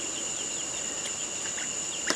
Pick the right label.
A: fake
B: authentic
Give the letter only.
B